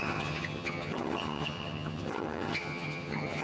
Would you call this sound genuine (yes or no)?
no